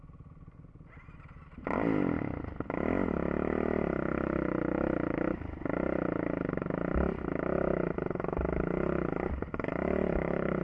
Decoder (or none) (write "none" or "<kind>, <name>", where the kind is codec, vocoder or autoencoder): none